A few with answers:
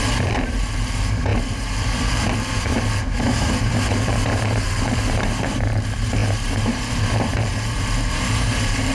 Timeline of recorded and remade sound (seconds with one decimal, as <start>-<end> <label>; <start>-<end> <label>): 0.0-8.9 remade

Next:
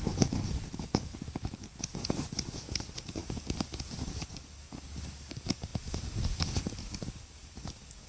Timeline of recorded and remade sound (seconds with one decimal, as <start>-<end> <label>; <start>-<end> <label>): 0.0-8.1 remade

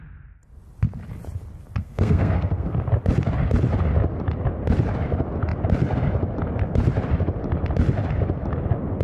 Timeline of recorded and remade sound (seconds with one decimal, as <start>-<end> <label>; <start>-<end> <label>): 0.0-1.8 recorded; 1.8-2.9 remade; 2.9-9.0 recorded